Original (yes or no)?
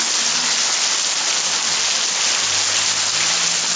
yes